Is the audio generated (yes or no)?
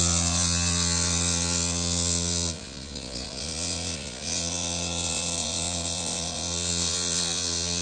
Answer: yes